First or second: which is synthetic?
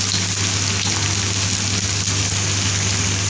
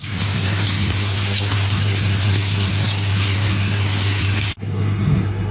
second